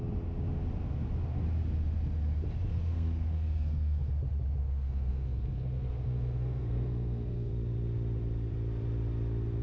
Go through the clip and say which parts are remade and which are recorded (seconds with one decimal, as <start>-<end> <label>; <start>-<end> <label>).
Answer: 0.0-2.7 recorded; 2.7-4.1 remade; 4.1-4.6 recorded; 4.6-7.5 remade; 7.5-9.6 recorded